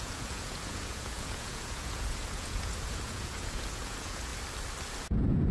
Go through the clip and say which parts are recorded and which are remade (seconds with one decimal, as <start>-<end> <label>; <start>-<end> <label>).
0.0-4.3 remade; 4.3-5.0 recorded; 5.0-5.5 remade